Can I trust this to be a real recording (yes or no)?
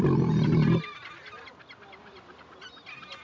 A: yes